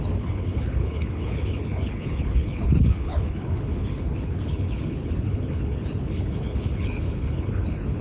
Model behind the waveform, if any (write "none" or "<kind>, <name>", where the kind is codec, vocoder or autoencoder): codec, HILCodec